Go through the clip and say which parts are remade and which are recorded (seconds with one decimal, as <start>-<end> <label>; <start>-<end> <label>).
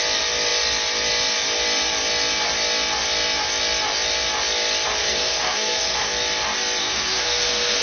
0.0-5.0 recorded; 5.0-6.1 remade; 6.1-6.8 recorded; 6.8-7.8 remade